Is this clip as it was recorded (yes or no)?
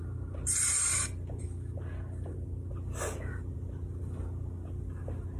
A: yes